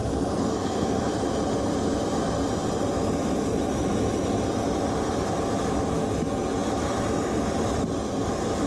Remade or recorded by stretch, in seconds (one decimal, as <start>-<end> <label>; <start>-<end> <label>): 0.0-1.1 remade; 1.1-8.7 recorded